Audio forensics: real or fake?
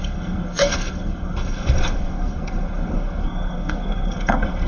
fake